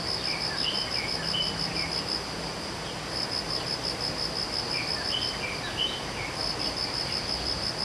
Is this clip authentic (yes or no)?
yes